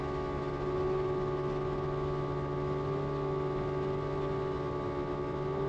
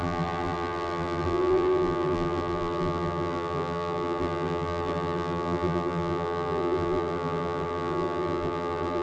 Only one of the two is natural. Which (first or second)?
first